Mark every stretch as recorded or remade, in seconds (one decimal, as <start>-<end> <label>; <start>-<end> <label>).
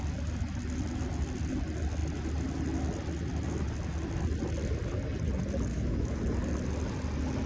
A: 0.0-5.7 recorded; 5.7-6.2 remade; 6.2-7.5 recorded